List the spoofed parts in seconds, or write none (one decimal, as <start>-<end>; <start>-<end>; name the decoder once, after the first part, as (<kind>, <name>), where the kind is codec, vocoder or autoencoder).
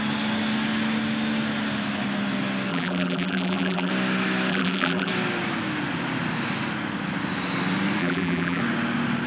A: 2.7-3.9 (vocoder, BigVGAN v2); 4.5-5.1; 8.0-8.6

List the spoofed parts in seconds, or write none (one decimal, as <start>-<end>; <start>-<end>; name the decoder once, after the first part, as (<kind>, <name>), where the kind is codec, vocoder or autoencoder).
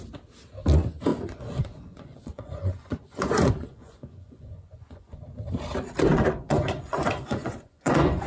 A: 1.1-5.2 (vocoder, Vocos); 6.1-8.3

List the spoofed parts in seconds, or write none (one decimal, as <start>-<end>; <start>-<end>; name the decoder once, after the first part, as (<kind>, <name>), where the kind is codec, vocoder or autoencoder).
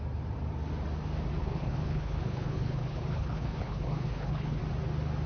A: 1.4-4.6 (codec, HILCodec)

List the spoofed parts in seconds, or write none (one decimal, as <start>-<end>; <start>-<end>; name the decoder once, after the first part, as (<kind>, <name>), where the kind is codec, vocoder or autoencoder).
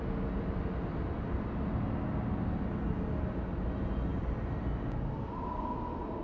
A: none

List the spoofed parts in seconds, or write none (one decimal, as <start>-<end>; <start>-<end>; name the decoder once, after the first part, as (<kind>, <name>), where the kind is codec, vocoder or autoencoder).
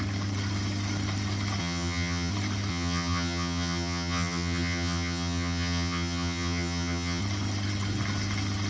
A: 1.6-2.3 (vocoder, HiFi-GAN); 2.7-7.2